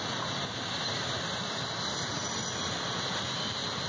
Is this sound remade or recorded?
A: recorded